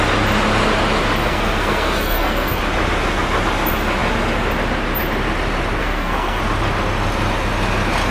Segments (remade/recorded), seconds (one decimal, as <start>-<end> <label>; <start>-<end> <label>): 0.0-1.2 recorded; 1.2-2.6 remade; 2.6-5.8 recorded; 5.8-6.4 remade; 6.4-8.1 recorded